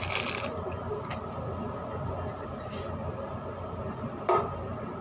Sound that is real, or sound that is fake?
real